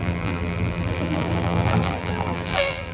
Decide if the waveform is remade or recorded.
remade